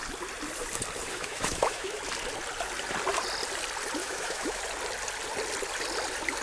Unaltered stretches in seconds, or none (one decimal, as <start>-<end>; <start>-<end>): 0.0-1.1; 2.0-4.0; 4.6-6.4